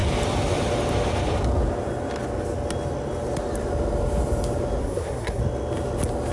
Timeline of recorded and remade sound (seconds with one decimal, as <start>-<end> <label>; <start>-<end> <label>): 0.0-4.8 recorded; 4.8-5.4 remade; 5.4-6.3 recorded

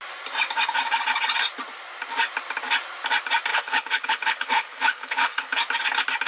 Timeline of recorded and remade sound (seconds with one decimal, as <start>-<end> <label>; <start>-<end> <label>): 0.0-3.5 recorded; 3.5-5.6 remade; 5.6-6.3 recorded

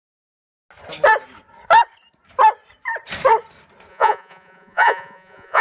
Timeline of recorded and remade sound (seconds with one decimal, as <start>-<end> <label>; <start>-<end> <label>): 0.0-3.9 recorded; 3.9-5.6 remade

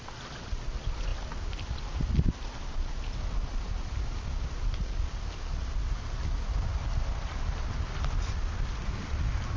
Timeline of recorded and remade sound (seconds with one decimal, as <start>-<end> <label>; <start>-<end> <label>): 0.0-9.6 recorded